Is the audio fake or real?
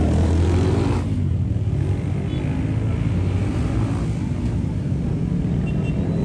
real